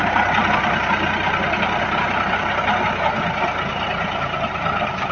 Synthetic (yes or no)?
no